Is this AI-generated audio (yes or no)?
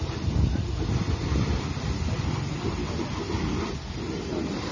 no